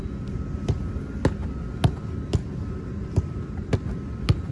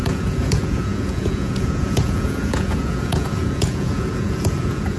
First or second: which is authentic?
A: first